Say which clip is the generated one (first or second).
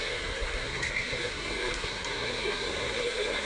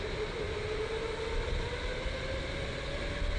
first